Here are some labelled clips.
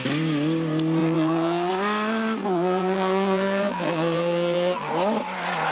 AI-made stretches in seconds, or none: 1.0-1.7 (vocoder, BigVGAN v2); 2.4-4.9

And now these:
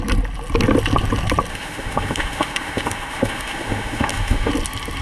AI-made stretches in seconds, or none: 1.5-4.5 (autoencoder, DAC-VAE)

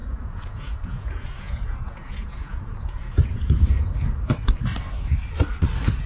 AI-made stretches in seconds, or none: 0.0-3.7 (vocoder, Vocos)

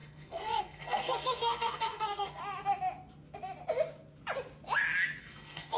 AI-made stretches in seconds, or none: 0.0-2.4 (codec, SNAC); 5.2-5.8